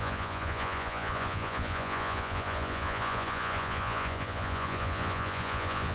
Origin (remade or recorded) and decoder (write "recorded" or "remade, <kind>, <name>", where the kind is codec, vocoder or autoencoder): remade, vocoder, Vocos